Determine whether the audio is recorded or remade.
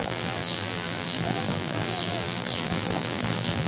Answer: remade